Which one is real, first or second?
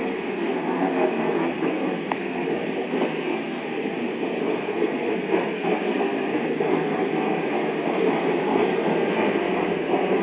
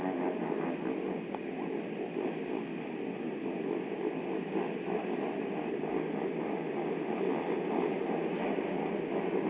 second